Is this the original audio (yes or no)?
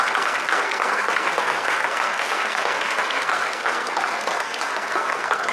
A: no